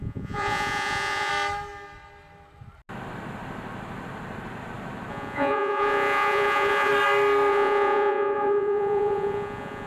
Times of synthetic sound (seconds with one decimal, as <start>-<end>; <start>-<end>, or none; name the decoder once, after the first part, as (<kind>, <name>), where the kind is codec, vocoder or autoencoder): 0.0-1.3 (vocoder, Vocos); 5.1-6.9; 7.5-9.9